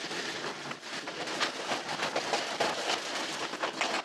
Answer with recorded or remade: recorded